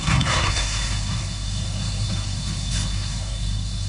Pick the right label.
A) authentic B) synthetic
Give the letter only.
B